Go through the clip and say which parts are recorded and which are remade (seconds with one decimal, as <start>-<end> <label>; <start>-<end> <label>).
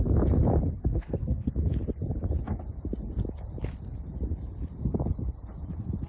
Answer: 0.0-0.8 recorded; 0.8-1.5 remade; 1.5-6.1 recorded